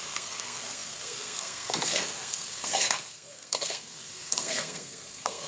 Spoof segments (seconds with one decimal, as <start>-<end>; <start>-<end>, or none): 0.0-5.5